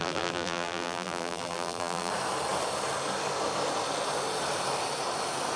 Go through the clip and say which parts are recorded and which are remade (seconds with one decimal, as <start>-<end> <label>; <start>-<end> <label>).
0.0-2.1 remade; 2.1-5.6 recorded